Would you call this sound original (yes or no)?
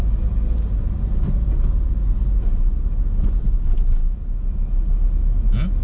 yes